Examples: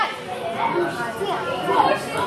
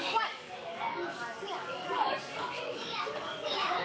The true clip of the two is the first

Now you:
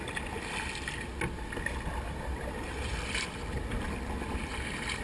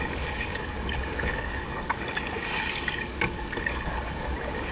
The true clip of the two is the first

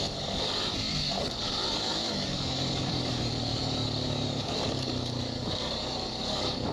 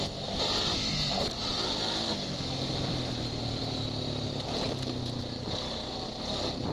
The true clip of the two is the second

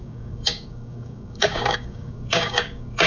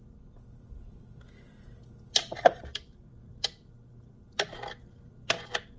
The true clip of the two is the second